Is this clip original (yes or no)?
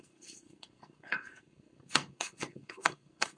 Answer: no